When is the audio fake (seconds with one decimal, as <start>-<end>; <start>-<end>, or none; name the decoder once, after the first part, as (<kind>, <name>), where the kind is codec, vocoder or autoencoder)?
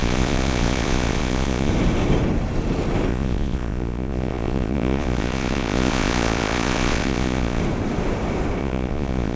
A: 0.0-1.7 (vocoder, Vocos); 3.1-7.6; 8.6-9.4